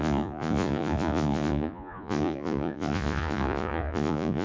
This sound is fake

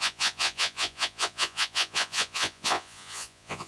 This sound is fake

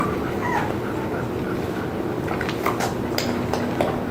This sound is real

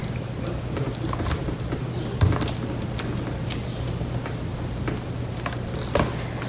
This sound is real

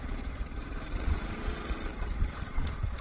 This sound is fake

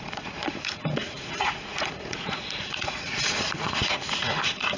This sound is fake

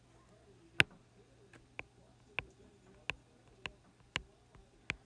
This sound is real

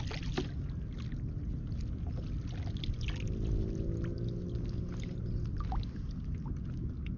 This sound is real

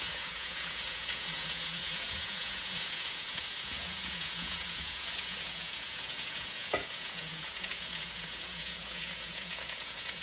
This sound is fake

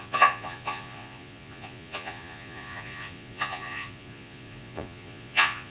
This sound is fake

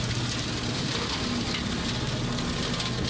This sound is real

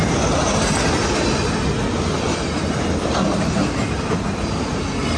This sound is real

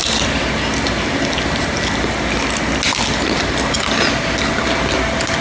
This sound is real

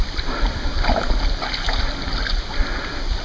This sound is real